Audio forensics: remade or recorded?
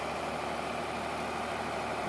recorded